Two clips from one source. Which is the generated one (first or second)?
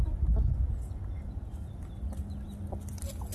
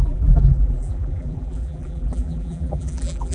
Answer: second